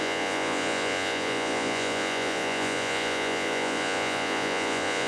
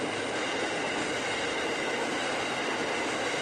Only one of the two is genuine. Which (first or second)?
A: second